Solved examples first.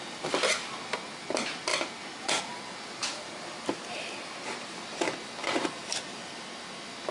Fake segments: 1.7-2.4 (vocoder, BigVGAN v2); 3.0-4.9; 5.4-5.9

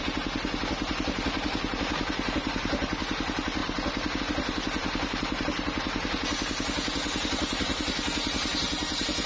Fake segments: none

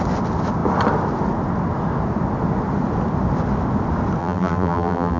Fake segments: 4.2-5.2 (vocoder, BigVGAN v2)

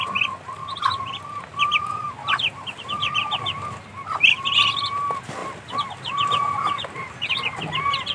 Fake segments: 1.7-3.9 (vocoder, BigVGAN v2); 5.4-7.3

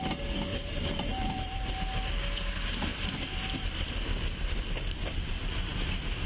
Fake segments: 0.5-1.7 (vocoder, BigVGAN v2); 2.9-5.3

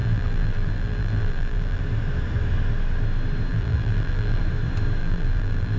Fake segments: 0.0-1.8 (vocoder, BigVGAN v2); 3.5-4.4; 5.0-5.8

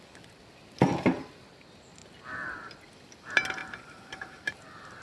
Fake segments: 0.9-1.5 (vocoder, BigVGAN v2); 3.6-4.5